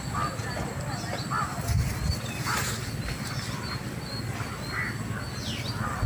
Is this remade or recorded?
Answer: recorded